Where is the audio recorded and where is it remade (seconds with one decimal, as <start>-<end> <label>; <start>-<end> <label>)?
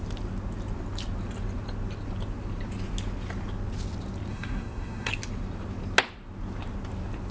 0.0-4.3 recorded; 4.3-5.1 remade; 5.1-7.3 recorded